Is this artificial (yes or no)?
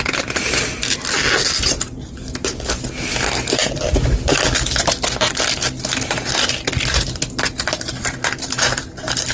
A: no